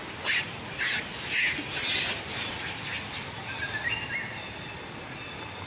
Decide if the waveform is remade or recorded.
recorded